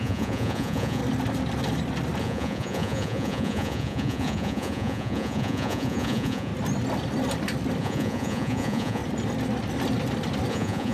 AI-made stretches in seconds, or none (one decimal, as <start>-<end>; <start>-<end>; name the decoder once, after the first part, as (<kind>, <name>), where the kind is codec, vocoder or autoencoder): 0.0-1.0 (vocoder, Vocos); 2.2-6.5; 7.8-9.0; 10.5-10.9